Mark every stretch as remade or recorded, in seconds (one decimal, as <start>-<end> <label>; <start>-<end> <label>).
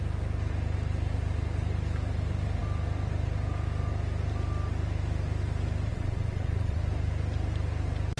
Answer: 0.0-5.9 recorded; 5.9-6.8 remade; 6.8-8.2 recorded